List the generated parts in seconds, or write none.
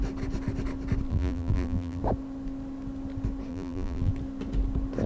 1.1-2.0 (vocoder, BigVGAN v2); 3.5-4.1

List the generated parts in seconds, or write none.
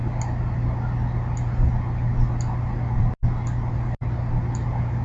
none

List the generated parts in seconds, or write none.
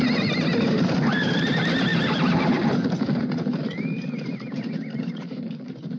0.0-6.0 (vocoder, BigVGAN v2)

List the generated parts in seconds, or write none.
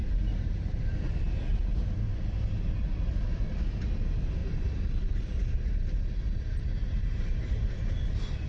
0.0-0.8 (vocoder, BigVGAN v2); 1.5-2.2; 4.4-7.8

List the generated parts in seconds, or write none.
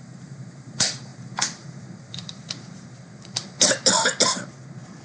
0.0-3.4 (vocoder, BigVGAN v2); 4.5-5.0